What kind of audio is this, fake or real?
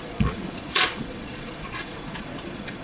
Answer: fake